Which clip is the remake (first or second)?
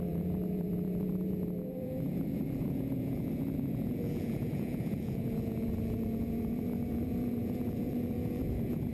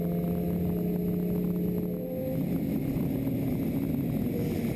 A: first